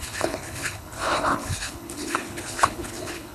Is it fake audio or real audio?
fake